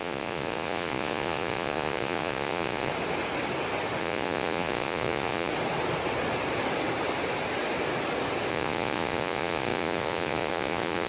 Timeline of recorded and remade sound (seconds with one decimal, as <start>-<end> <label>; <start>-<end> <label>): 0.0-2.9 remade; 2.9-4.0 recorded; 4.0-5.5 remade; 5.5-8.5 recorded; 8.5-11.1 remade